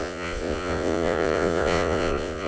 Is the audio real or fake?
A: fake